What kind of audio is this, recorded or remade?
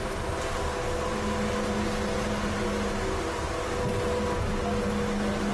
recorded